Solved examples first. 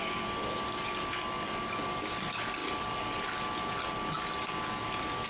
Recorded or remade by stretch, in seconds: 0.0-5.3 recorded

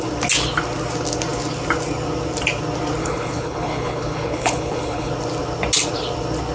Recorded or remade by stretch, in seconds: 0.0-3.0 recorded; 3.0-5.1 remade; 5.1-6.5 recorded

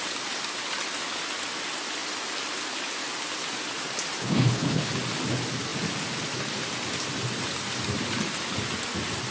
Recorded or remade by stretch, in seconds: 0.0-4.2 recorded; 4.2-4.9 remade; 4.9-9.3 recorded

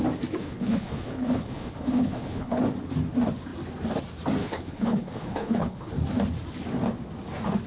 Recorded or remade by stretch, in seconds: 0.0-0.4 recorded; 0.4-2.6 remade; 2.6-4.4 recorded; 4.4-5.9 remade; 5.9-7.7 recorded

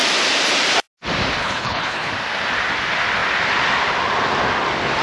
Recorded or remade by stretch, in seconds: 0.0-1.4 recorded; 1.4-2.1 remade; 2.1-5.0 recorded

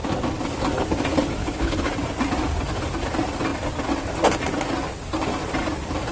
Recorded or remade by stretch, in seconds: 0.0-1.4 recorded; 1.4-1.9 remade; 1.9-6.1 recorded

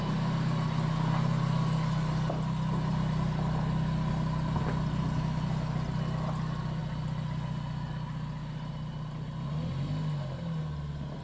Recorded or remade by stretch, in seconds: 0.0-11.2 recorded